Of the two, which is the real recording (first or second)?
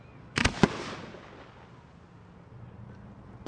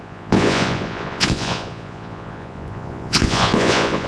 first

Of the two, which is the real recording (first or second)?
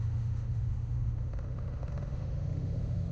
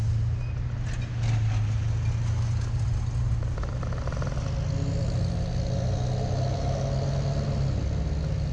second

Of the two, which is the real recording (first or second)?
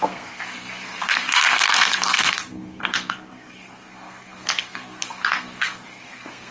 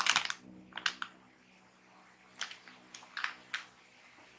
second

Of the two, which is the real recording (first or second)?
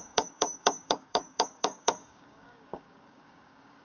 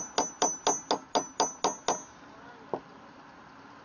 second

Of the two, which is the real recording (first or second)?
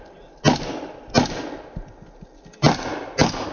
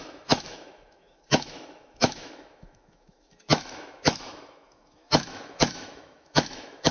first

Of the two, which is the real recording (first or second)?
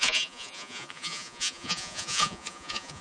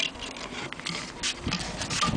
second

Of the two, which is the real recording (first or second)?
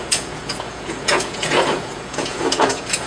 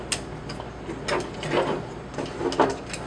second